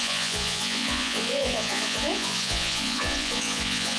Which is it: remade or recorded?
remade